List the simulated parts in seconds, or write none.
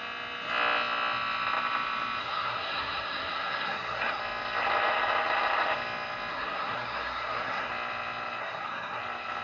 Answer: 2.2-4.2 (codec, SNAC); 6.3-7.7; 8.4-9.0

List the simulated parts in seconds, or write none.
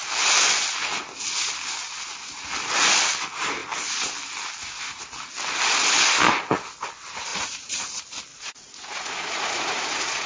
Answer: 7.3-7.8 (vocoder, Vocos); 8.3-10.3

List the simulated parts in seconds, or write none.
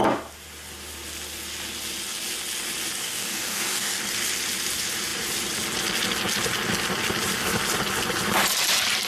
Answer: 3.0-4.0 (codec, DAC)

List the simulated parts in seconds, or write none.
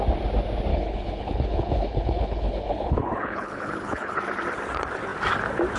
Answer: 0.7-4.2 (codec, HILCodec)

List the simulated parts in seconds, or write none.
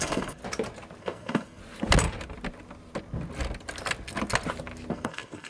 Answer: 0.0-0.4 (codec, SNAC); 1.0-1.6; 4.9-5.5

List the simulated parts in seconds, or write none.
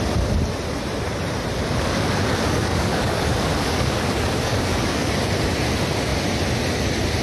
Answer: 1.6-5.1 (codec, DAC)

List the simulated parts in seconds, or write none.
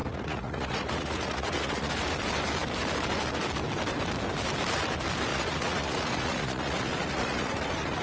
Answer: 0.0-1.9 (vocoder, Vocos); 5.3-8.0